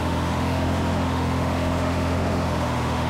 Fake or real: fake